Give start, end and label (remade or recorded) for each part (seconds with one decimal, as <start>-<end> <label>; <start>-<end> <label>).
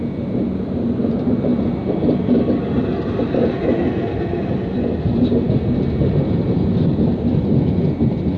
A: 0.0-8.4 recorded